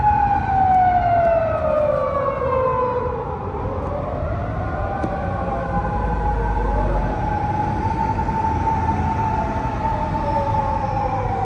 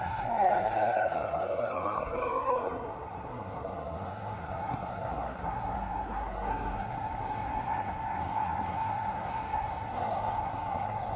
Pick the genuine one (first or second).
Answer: first